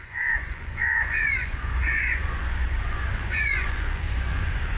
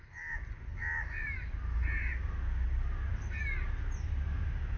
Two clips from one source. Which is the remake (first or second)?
first